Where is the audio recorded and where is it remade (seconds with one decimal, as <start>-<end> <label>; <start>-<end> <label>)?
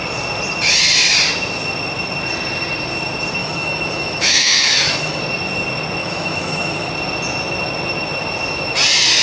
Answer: 0.0-3.4 recorded; 3.4-5.2 remade; 5.2-6.0 recorded; 6.0-6.9 remade; 6.9-9.2 recorded